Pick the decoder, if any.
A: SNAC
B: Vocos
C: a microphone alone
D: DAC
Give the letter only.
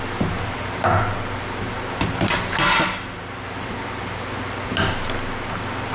C